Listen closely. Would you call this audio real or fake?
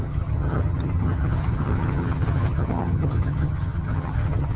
fake